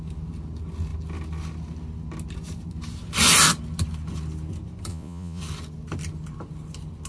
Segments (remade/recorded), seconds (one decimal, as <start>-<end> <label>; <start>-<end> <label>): 0.0-4.9 recorded; 4.9-5.4 remade; 5.4-7.1 recorded